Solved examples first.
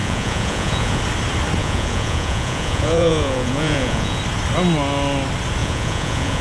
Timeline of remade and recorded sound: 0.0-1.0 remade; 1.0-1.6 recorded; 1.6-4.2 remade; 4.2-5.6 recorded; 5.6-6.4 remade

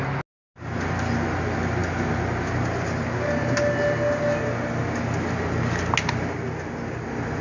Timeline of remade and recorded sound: 0.0-7.4 recorded

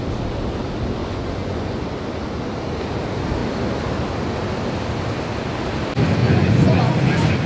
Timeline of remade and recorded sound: 0.0-1.0 recorded; 1.0-1.8 remade; 1.8-6.2 recorded; 6.2-7.1 remade; 7.1-7.5 recorded

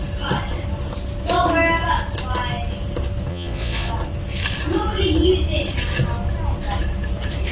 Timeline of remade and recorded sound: 0.0-3.3 recorded; 3.3-3.9 remade; 3.9-7.5 recorded